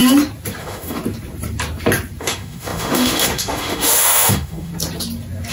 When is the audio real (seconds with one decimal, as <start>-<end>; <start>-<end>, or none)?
0.0-0.6; 1.0-2.2; 4.7-5.5